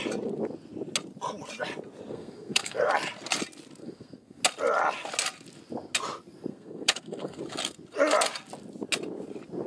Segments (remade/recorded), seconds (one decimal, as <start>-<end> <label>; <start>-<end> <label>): 0.0-2.1 recorded; 2.1-2.9 remade; 2.9-3.8 recorded; 3.8-4.4 remade; 4.4-6.5 recorded; 6.5-7.4 remade; 7.4-9.7 recorded